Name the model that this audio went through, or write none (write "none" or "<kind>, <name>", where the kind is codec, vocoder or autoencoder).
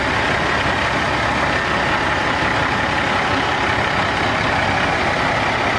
none